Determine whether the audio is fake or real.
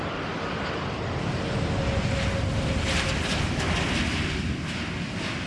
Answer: real